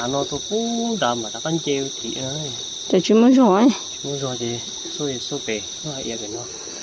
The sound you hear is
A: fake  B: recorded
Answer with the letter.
B